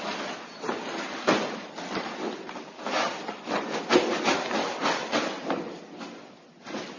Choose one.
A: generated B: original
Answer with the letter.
B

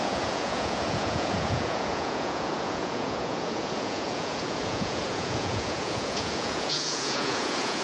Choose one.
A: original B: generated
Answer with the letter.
B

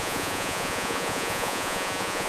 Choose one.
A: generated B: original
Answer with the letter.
A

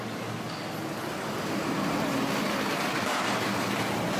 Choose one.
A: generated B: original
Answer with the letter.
B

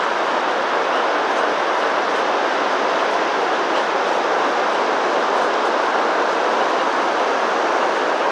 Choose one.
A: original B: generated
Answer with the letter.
A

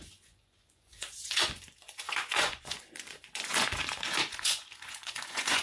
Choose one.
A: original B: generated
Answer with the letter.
B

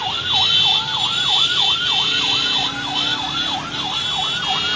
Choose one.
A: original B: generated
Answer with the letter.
A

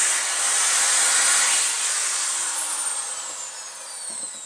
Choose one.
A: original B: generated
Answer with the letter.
A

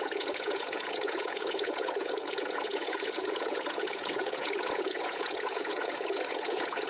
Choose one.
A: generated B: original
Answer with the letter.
A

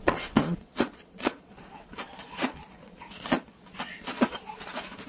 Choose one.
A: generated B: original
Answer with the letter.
A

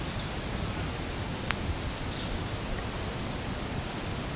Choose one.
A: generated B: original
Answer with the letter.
B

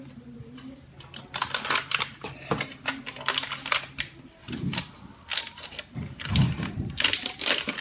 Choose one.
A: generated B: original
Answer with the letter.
B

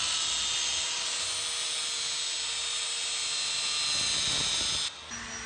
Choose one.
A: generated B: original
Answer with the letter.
B